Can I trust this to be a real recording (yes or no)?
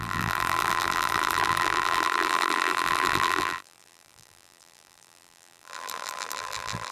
no